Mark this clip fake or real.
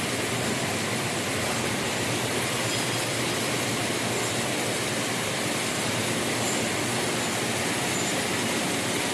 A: real